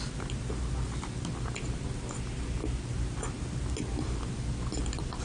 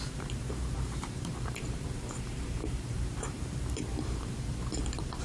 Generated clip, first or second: second